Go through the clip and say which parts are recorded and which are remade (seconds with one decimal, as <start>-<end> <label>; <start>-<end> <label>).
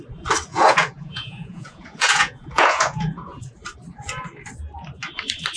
0.0-0.5 recorded; 0.5-3.4 remade; 3.4-5.6 recorded